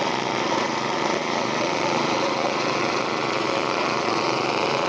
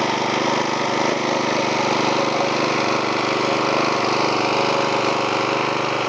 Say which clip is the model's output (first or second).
first